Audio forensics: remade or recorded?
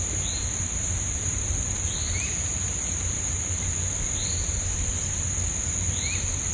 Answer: recorded